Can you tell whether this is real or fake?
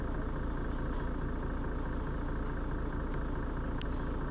real